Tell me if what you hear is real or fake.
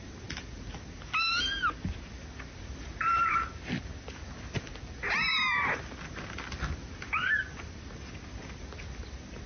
real